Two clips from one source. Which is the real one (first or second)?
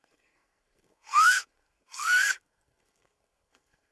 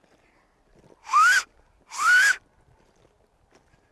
second